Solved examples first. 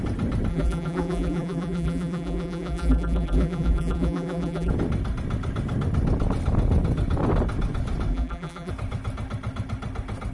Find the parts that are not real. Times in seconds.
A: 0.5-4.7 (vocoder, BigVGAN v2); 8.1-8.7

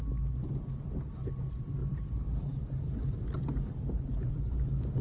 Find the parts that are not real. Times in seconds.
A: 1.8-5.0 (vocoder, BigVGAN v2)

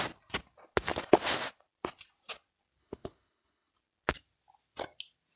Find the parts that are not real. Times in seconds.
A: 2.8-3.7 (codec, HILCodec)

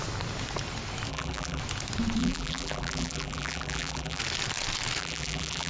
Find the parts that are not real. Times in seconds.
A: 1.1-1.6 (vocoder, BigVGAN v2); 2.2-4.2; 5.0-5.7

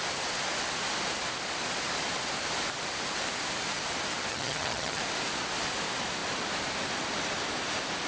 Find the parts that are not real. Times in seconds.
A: 4.3-5.0 (vocoder, HiFi-GAN)